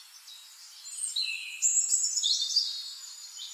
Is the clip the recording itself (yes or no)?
yes